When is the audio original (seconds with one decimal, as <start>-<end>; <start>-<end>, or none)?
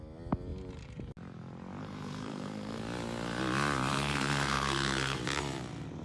0.0-1.8; 2.8-3.9; 5.2-6.0